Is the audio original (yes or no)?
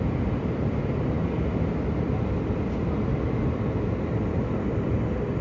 yes